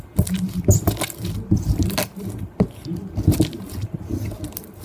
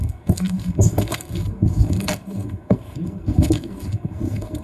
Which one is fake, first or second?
second